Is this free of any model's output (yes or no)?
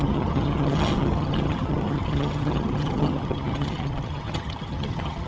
no